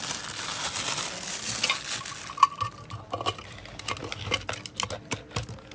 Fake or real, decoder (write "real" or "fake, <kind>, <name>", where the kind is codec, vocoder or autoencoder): real